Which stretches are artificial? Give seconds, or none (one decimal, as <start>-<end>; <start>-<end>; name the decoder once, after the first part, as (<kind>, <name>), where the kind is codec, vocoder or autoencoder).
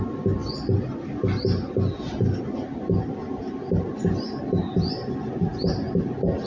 none